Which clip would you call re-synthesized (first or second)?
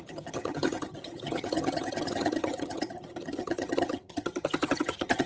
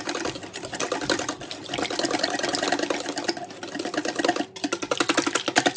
first